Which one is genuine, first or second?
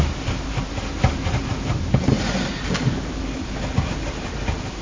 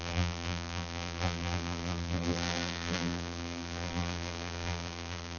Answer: first